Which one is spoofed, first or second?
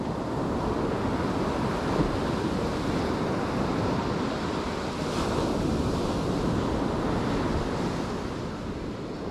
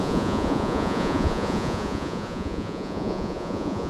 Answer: second